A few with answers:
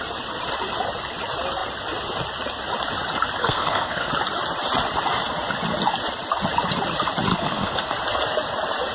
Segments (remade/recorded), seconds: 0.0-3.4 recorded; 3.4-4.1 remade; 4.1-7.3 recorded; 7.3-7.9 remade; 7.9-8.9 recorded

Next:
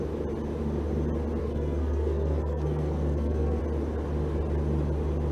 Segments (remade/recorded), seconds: 0.0-1.4 recorded; 1.4-3.6 remade; 3.6-5.3 recorded